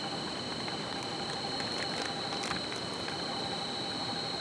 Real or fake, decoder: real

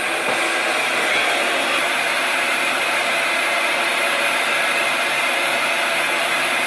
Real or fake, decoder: real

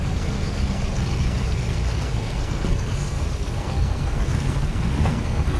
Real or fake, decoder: fake, codec, SNAC